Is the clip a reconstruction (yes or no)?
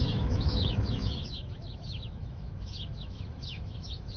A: yes